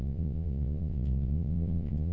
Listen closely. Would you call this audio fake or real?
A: fake